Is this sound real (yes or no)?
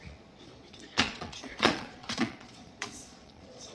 no